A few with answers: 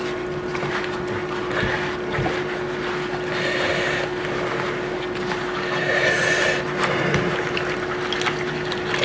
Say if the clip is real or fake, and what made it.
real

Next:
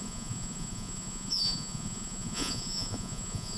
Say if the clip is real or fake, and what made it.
fake, vocoder, Vocos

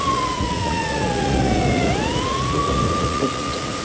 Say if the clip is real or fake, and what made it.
fake, vocoder, Vocos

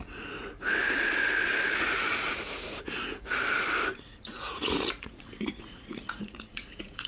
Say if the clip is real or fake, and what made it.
fake, vocoder, Vocos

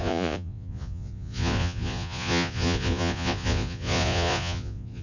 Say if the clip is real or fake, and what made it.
fake, vocoder, Vocos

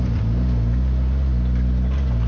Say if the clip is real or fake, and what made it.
real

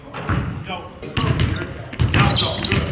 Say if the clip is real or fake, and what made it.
real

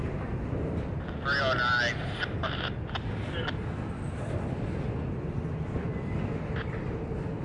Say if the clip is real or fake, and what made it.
real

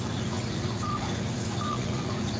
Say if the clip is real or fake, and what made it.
fake, vocoder, Vocos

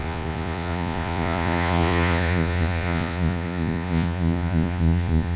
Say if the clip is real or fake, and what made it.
fake, vocoder, Vocos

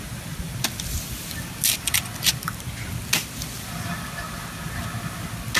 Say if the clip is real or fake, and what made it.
real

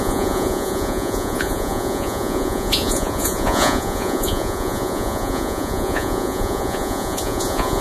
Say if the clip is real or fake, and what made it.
fake, vocoder, Vocos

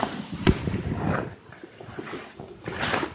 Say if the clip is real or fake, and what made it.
real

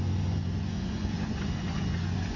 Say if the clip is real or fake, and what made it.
fake, vocoder, Vocos